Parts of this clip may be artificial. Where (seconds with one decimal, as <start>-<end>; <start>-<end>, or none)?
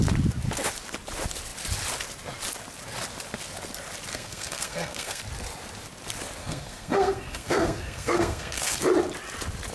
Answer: 4.1-5.2; 6.4-8.8